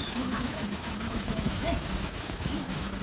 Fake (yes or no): yes